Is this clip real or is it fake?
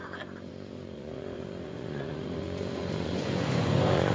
fake